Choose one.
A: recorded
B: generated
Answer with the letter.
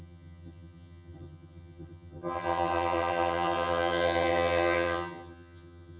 B